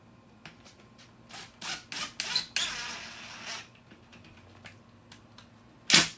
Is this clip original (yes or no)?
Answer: yes